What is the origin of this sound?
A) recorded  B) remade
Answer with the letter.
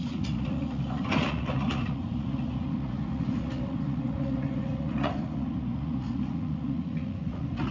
B